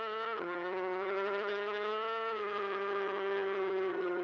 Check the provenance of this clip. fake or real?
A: fake